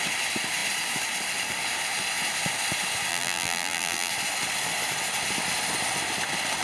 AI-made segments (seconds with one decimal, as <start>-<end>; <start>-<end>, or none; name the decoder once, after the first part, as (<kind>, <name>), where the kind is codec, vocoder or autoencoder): 3.1-4.1 (vocoder, BigVGAN v2)